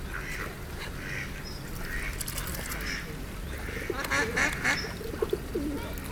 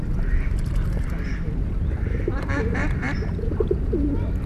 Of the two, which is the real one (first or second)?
first